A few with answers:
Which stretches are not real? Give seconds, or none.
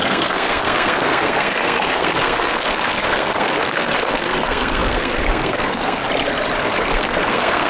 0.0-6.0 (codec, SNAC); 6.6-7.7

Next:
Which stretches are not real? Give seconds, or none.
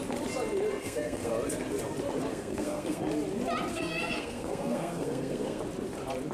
0.8-1.3 (codec, SNAC); 2.3-3.0; 3.7-5.6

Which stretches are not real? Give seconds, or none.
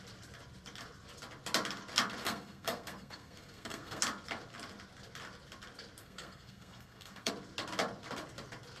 2.2-4.0 (codec, SNAC); 6.0-7.3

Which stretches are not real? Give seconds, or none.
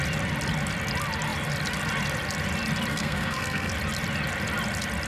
2.9-3.7 (codec, SNAC)